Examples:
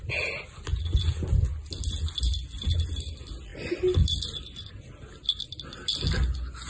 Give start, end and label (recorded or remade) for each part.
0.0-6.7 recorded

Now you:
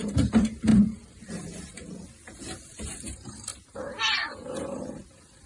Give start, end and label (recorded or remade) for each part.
0.0-5.5 remade

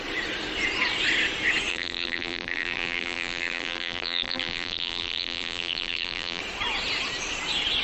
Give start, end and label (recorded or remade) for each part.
0.0-1.7 recorded; 1.7-6.4 remade; 6.4-7.8 recorded

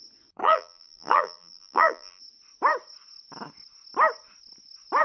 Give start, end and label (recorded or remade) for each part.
0.0-0.4 recorded; 0.4-2.2 remade; 2.2-5.0 recorded